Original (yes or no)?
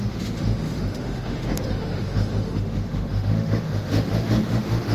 no